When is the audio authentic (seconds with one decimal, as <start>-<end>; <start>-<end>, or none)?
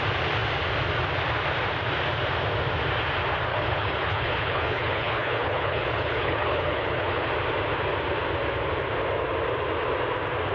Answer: 0.0-3.5; 7.3-10.5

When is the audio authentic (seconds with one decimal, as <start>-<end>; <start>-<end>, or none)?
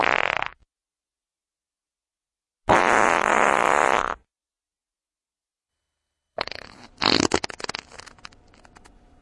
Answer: 0.0-5.7; 6.9-9.2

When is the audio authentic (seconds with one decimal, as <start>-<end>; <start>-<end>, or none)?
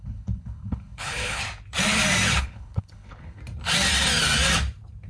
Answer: 1.4-2.4; 3.4-5.1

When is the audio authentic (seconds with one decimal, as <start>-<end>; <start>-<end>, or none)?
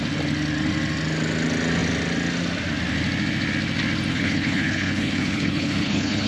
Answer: 0.0-4.1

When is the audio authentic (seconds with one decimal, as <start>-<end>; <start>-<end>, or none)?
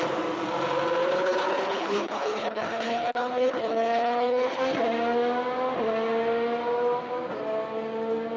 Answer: 0.0-1.1; 4.6-8.4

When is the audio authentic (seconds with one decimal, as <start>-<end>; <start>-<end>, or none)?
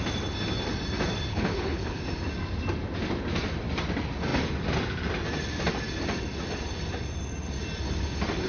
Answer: 0.0-1.3; 2.0-8.5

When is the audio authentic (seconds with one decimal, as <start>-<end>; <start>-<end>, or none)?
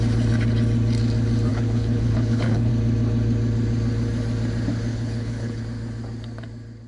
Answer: 0.0-1.5; 2.7-4.9; 5.6-6.9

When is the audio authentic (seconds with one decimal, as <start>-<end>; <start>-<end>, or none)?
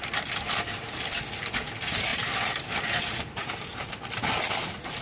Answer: 0.0-5.0